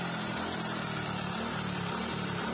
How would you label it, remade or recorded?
recorded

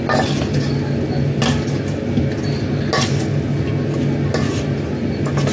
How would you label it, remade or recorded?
recorded